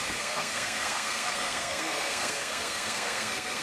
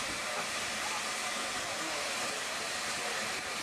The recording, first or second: second